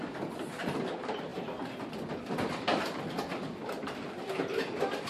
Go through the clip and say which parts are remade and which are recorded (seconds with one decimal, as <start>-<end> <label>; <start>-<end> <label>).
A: 0.0-5.1 recorded